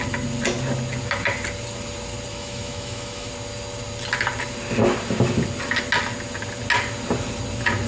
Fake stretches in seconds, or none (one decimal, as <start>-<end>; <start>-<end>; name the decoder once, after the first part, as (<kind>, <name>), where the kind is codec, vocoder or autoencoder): 2.3-3.3 (autoencoder, DAC-VAE)